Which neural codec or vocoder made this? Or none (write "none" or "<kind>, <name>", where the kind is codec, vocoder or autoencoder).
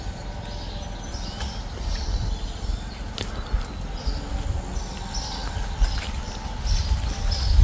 none